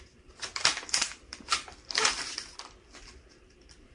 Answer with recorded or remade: recorded